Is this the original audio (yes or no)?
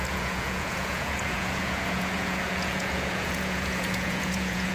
no